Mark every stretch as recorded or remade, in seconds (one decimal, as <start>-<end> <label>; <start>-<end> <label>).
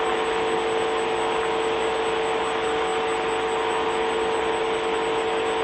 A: 0.0-5.6 recorded